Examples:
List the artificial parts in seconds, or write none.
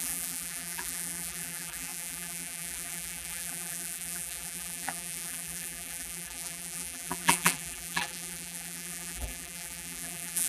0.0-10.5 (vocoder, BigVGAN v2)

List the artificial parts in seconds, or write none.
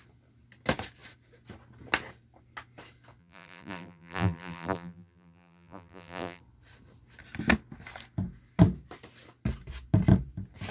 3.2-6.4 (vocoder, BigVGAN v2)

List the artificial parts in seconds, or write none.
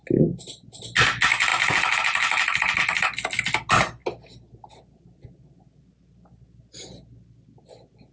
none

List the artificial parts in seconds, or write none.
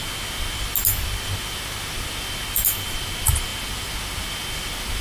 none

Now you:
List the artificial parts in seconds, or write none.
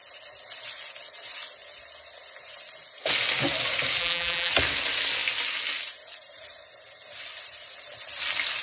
4.0-4.5 (vocoder, BigVGAN v2)